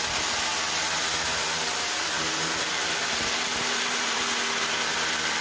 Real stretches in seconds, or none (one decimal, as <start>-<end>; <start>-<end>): 0.0-1.0; 4.2-5.4